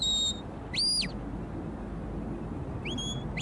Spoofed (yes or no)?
no